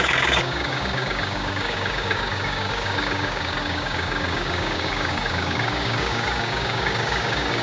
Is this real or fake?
fake